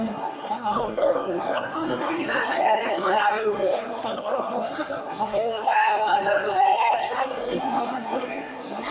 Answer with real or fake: fake